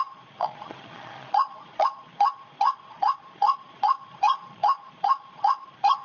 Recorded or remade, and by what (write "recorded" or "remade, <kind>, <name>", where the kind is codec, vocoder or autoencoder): remade, vocoder, Vocos